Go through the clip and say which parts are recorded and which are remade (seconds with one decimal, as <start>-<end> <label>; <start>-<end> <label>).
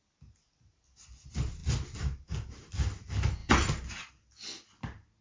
0.0-5.2 recorded